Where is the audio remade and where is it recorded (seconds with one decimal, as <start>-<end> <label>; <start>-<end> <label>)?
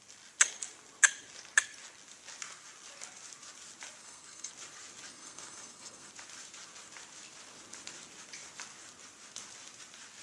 0.0-4.0 recorded; 4.0-4.5 remade; 4.5-5.1 recorded; 5.1-6.1 remade; 6.1-10.2 recorded